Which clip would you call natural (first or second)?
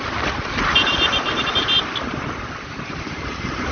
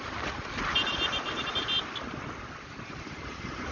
second